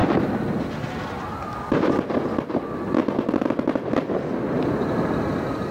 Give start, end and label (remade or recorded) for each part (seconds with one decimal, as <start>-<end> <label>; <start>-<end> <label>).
0.0-5.7 recorded